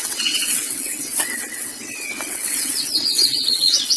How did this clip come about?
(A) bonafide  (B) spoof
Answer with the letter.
B